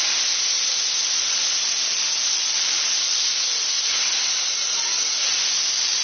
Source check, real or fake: real